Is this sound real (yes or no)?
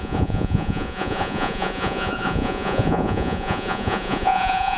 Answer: no